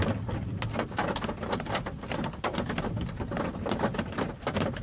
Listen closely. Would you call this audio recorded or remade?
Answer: recorded